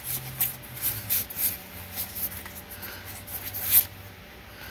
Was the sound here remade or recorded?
recorded